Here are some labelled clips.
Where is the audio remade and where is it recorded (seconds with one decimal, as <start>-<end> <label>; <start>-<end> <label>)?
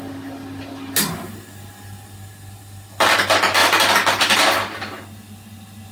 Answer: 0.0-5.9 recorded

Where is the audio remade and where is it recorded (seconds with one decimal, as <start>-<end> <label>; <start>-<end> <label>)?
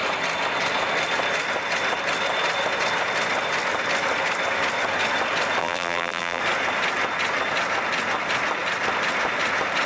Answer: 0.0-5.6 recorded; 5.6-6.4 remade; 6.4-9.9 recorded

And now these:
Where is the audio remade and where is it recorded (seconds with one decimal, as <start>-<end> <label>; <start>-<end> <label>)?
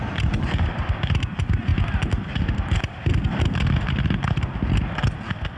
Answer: 0.0-5.6 recorded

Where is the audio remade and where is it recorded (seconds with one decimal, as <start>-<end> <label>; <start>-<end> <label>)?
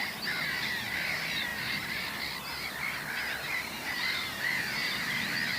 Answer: 0.0-5.6 recorded